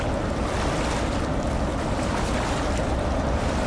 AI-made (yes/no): no